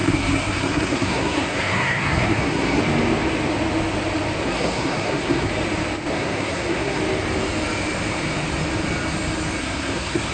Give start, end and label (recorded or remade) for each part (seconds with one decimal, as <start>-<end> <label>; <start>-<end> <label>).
0.0-2.8 remade; 2.8-4.4 recorded; 4.4-5.5 remade; 5.5-6.1 recorded; 6.1-7.0 remade; 7.0-9.6 recorded; 9.6-10.3 remade